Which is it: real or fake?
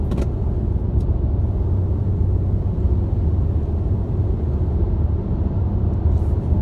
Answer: real